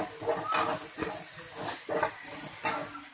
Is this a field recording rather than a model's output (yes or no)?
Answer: yes